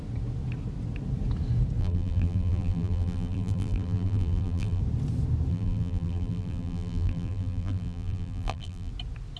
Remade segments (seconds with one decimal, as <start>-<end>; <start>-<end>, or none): 1.8-4.8; 5.5-8.9